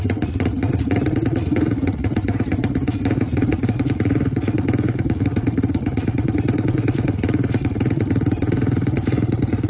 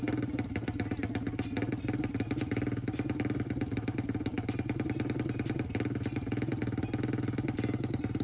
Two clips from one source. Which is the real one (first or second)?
second